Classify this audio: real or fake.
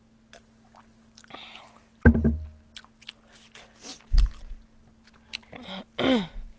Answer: real